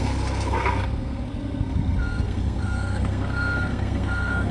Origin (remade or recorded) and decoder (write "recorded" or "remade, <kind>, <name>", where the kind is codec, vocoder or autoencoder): remade, codec, SNAC